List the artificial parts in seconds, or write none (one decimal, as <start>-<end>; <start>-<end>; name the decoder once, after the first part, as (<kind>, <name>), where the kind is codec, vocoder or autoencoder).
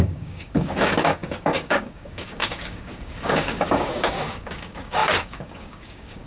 0.0-6.3 (codec, DAC)